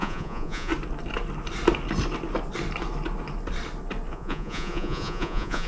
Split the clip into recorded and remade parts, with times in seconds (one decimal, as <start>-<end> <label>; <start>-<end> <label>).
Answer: 0.0-0.7 remade; 0.7-4.1 recorded; 4.1-5.7 remade